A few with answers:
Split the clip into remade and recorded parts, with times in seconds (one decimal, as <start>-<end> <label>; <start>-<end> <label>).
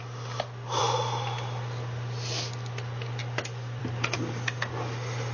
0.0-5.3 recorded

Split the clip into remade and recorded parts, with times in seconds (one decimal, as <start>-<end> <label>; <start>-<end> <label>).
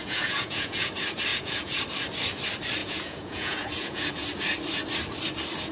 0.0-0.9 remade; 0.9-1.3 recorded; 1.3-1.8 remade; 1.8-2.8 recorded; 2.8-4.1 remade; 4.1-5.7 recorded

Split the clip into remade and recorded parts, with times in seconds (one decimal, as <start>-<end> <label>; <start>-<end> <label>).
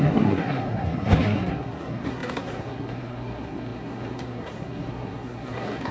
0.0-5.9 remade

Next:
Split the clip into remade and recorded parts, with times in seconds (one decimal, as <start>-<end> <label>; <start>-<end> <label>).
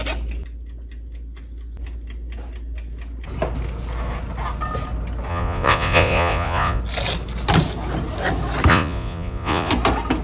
0.0-5.3 recorded; 5.3-6.8 remade; 6.8-8.7 recorded; 8.7-9.7 remade; 9.7-10.2 recorded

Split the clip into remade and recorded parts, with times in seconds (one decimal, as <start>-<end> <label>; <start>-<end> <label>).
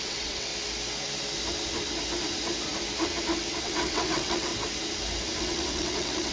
0.0-0.5 remade; 0.5-3.6 recorded; 3.6-4.5 remade; 4.5-5.4 recorded; 5.4-6.3 remade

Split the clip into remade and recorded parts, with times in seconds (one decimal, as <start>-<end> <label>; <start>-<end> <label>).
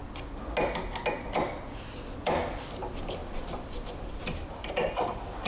0.0-3.2 recorded; 3.2-4.7 remade; 4.7-5.5 recorded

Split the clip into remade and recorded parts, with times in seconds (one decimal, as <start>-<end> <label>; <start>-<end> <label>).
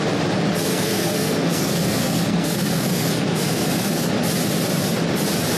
0.0-0.7 recorded; 0.7-4.1 remade; 4.1-5.6 recorded